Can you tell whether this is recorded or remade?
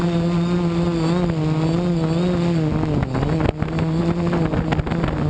recorded